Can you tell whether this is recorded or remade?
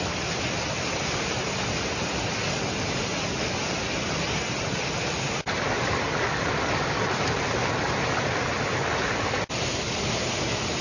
recorded